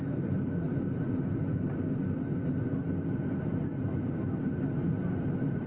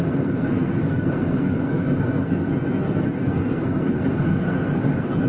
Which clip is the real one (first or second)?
first